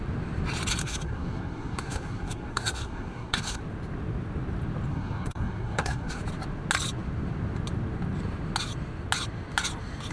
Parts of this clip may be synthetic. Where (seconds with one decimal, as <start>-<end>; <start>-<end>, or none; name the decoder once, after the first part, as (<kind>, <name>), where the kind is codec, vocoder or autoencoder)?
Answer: 0.8-3.6 (codec, SNAC); 4.9-6.2